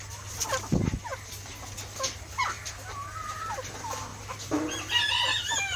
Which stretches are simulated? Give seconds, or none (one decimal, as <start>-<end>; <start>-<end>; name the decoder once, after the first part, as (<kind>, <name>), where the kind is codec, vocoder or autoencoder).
4.1-5.8 (vocoder, BigVGAN v2)